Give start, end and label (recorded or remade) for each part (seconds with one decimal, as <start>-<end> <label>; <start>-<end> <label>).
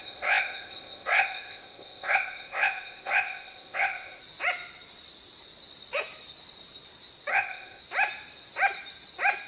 0.0-4.2 remade; 4.2-7.3 recorded; 7.3-7.8 remade; 7.8-9.5 recorded